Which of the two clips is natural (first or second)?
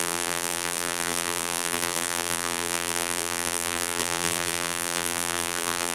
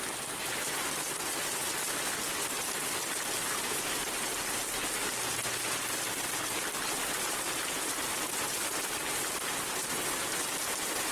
second